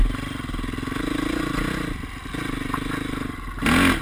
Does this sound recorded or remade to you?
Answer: recorded